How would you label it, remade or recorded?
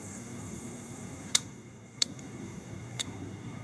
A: remade